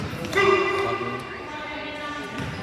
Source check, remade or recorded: recorded